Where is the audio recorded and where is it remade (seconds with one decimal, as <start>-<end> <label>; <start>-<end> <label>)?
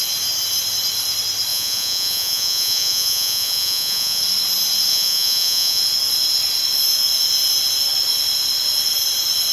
0.0-1.5 recorded; 1.5-4.2 remade; 4.2-4.9 recorded; 4.9-5.8 remade; 5.8-9.5 recorded